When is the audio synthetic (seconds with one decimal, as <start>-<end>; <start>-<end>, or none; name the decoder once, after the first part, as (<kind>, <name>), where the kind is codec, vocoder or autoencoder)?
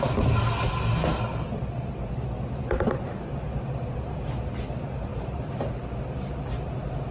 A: 5.1-5.7 (vocoder, BigVGAN v2)